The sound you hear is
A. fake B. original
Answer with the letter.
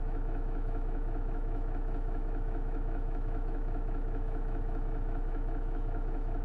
A